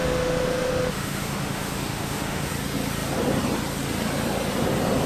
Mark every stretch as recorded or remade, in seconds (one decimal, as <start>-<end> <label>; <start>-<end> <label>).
0.0-2.5 remade; 2.5-5.1 recorded